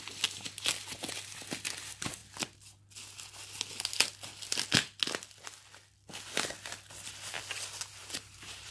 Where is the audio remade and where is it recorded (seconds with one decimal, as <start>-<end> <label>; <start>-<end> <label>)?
0.0-8.0 recorded; 8.0-8.7 remade